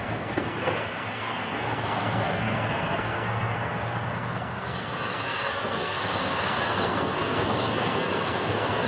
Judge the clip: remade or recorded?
remade